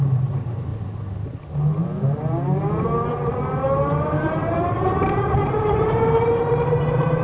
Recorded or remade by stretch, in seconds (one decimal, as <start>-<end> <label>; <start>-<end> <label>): 0.0-0.7 remade; 0.7-4.0 recorded; 4.0-7.2 remade